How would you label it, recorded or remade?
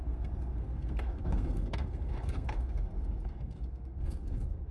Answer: remade